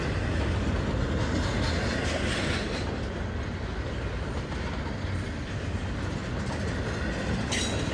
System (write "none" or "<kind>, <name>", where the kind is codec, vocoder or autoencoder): none